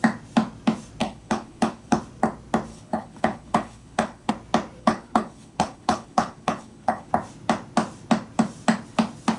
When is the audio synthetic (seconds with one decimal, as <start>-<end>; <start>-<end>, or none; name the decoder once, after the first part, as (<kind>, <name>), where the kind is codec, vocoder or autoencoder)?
1.0-2.0 (codec, HILCodec); 2.7-4.3; 4.8-7.1